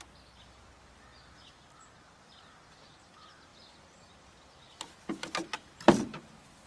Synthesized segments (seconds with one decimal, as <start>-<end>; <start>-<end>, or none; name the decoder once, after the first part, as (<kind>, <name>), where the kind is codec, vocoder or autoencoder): none

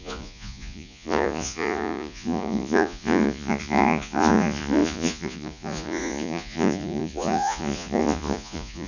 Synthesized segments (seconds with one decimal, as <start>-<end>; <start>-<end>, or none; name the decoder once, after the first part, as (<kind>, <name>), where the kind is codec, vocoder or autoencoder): 0.0-8.9 (vocoder, Vocos)

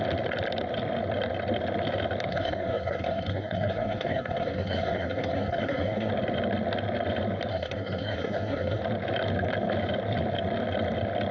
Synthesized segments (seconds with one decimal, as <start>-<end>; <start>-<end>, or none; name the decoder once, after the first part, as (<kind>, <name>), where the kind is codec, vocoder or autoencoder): 2.3-6.1 (codec, SNAC); 7.5-8.8

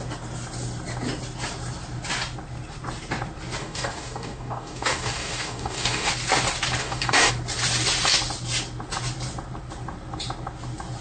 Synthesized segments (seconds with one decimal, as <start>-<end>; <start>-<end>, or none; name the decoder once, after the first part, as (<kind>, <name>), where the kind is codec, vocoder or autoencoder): 3.6-6.1 (codec, DAC); 6.8-7.3

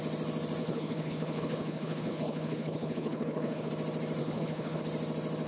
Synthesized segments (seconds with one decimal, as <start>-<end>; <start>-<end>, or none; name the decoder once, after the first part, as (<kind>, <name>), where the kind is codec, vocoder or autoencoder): 0.6-3.7 (codec, HILCodec); 4.2-4.8

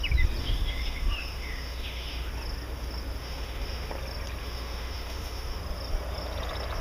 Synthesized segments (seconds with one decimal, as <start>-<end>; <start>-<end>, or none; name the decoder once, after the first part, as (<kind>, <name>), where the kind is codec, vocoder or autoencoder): 0.4-2.3 (autoencoder, DAC-VAE); 3.2-3.9; 4.4-5.6

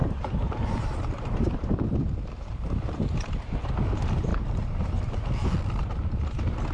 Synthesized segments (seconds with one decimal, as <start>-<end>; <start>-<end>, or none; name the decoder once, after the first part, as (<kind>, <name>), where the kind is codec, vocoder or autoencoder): 0.0-1.7 (vocoder, BigVGAN v2); 4.3-5.0

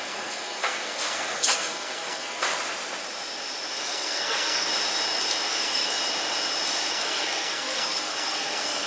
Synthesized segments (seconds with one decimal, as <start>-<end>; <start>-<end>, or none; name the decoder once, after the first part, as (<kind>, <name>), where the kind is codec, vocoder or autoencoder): 0.0-2.5 (codec, SNAC); 3.8-4.7; 5.5-5.9; 6.9-8.9